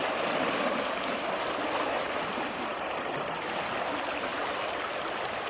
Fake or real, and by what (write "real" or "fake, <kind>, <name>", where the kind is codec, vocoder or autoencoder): real